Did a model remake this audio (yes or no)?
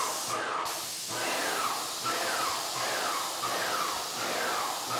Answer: no